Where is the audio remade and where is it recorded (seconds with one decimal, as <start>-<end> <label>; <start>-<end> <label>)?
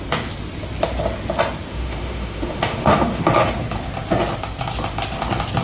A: 0.0-1.7 recorded; 1.7-3.2 remade; 3.2-5.6 recorded